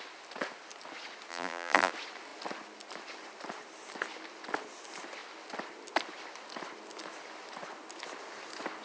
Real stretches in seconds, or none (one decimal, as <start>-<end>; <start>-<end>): 0.0-1.3; 1.9-8.8